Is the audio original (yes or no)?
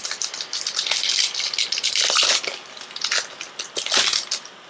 yes